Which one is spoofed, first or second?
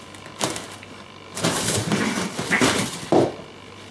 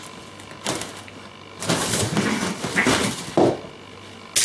first